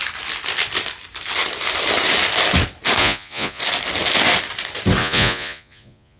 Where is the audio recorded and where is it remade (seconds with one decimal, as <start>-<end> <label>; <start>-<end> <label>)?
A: 0.0-3.0 recorded; 3.0-3.6 remade; 3.6-5.0 recorded; 5.0-6.2 remade